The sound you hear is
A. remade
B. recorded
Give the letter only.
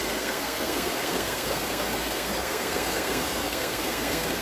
A